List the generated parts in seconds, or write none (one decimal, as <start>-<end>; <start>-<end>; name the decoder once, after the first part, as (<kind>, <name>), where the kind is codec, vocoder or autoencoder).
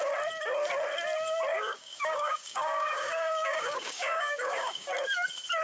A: 1.5-4.9 (codec, DAC)